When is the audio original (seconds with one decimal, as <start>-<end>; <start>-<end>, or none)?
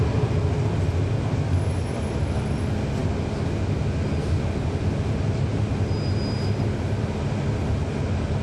0.0-8.4